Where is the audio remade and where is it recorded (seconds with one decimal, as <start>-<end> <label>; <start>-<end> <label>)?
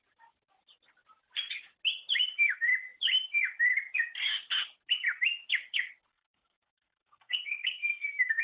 0.0-6.1 recorded; 6.1-8.4 remade